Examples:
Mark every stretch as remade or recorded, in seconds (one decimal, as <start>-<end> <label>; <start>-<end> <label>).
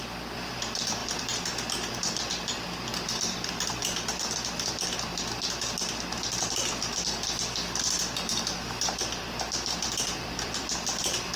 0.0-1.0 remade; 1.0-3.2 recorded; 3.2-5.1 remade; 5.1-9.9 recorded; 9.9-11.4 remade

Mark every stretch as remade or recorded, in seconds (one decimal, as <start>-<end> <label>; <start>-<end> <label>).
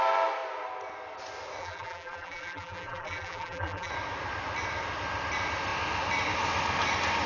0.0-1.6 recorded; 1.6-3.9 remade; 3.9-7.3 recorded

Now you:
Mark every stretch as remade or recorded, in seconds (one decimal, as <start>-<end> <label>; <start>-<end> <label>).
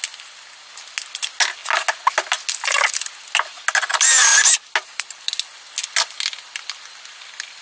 0.0-7.6 recorded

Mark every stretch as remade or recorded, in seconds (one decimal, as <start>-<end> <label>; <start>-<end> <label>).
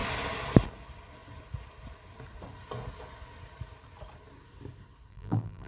0.0-5.1 recorded; 5.1-5.7 remade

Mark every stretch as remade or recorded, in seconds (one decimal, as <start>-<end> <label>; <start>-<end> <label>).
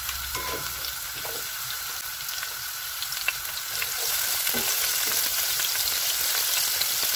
0.0-5.3 recorded; 5.3-5.9 remade; 5.9-7.2 recorded